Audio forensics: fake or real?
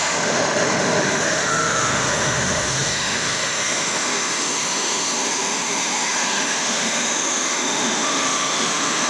fake